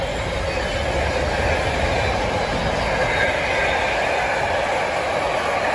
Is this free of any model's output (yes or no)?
yes